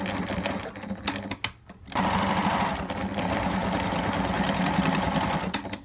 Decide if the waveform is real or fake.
real